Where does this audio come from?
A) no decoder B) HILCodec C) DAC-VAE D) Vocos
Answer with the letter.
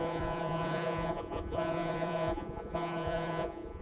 D